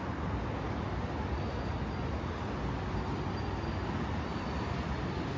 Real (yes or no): yes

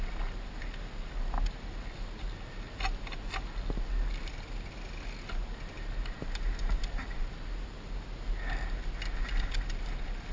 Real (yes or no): yes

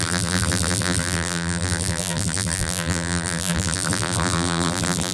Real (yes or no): no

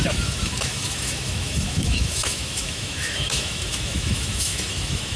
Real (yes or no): no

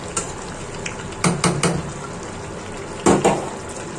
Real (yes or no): yes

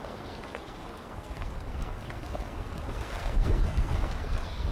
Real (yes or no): no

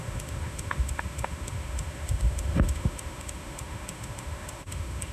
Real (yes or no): no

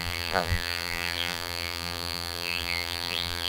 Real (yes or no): no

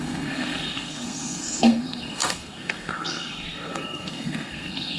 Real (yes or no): no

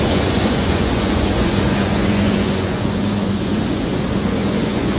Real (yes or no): no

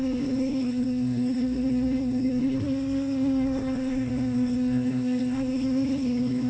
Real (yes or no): no